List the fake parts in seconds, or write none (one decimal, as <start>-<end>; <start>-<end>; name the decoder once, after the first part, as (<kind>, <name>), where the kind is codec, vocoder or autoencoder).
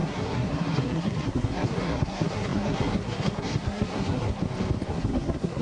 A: 0.0-4.4 (codec, SNAC); 4.9-5.6